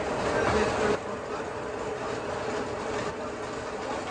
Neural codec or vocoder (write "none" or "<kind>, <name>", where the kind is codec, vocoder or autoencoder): none